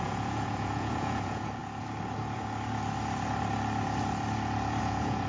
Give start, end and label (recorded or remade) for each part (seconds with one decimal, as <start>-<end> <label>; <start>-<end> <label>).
0.0-1.6 remade; 1.6-4.8 recorded; 4.8-5.3 remade